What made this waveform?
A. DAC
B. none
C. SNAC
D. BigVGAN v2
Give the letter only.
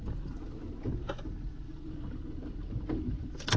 B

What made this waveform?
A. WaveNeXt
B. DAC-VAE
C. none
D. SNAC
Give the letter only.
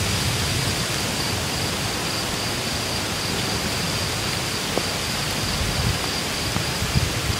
C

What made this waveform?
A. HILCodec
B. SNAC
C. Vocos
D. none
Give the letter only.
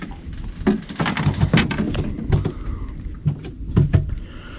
D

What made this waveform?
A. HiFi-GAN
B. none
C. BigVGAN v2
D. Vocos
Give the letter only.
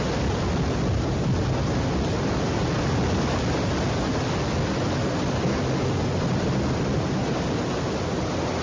B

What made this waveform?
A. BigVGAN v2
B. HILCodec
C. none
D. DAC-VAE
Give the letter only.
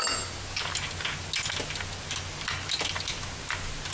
C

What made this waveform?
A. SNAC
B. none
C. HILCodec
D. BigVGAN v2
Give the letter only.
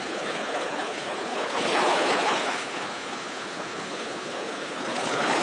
C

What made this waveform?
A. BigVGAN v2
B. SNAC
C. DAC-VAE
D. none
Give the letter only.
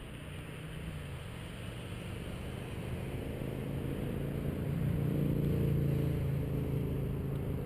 D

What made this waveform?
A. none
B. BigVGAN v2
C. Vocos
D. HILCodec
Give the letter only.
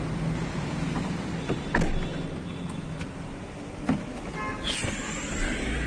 A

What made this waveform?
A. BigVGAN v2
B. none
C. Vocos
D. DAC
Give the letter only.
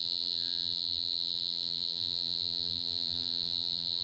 A